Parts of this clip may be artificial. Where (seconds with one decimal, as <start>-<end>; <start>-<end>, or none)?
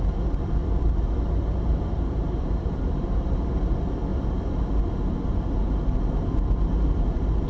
0.6-3.3; 5.3-5.9